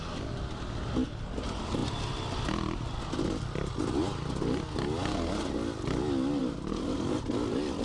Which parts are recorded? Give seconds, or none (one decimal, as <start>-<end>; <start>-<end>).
0.0-7.8